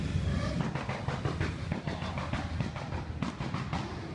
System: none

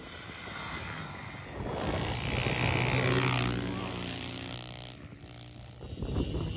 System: none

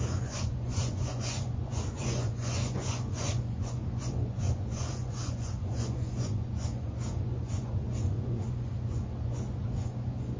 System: vocoder, Vocos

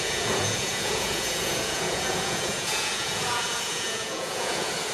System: vocoder, Vocos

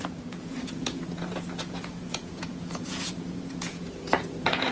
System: vocoder, Vocos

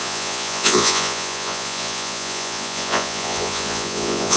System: vocoder, Vocos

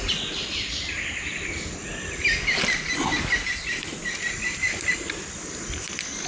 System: none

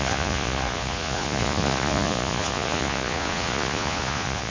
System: vocoder, Vocos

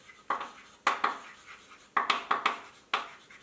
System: none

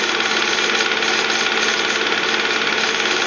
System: none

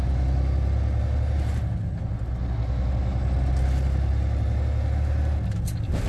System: none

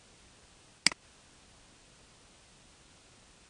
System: none